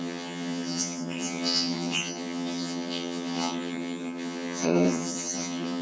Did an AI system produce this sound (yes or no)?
yes